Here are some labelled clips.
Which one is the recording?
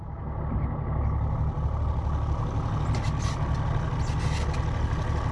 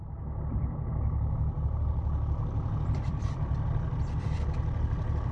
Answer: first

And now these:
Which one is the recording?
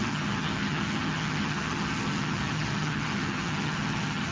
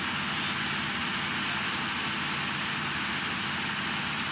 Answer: second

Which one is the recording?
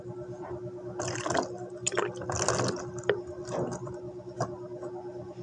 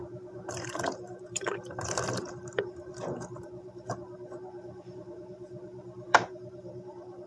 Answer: first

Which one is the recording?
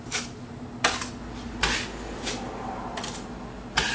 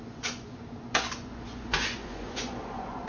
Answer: first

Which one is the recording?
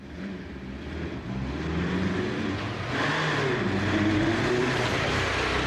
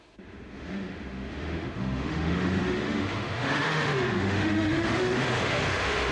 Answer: first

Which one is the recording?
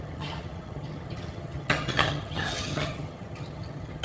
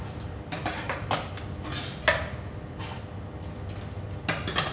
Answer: second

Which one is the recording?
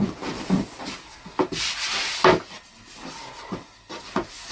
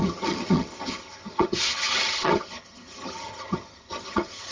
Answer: first